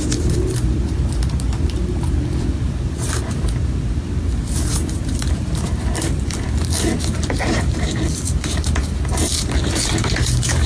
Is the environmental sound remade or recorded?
remade